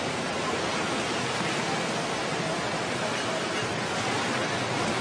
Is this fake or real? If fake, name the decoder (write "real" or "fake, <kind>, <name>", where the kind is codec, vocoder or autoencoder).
real